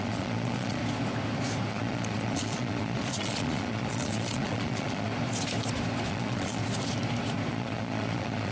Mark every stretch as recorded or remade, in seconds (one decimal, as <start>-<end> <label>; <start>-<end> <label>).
0.0-0.8 remade; 0.8-1.7 recorded; 1.7-5.1 remade; 5.1-6.1 recorded; 6.1-6.6 remade; 6.6-7.5 recorded; 7.5-8.5 remade